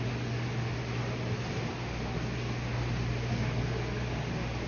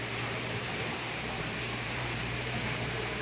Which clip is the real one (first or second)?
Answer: first